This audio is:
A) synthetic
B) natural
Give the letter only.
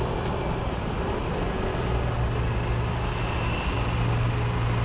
B